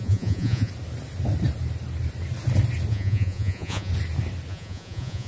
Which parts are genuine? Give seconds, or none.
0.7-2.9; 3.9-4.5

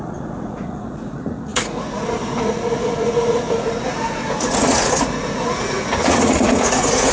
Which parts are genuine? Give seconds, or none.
none